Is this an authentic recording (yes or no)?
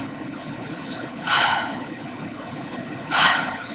no